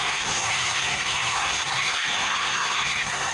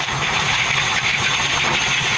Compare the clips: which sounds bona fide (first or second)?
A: second